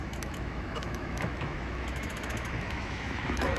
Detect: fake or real fake